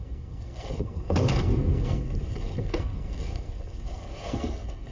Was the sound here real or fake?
fake